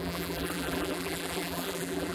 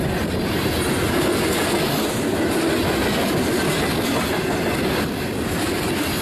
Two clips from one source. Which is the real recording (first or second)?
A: second